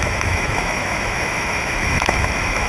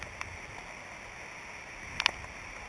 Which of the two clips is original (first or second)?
second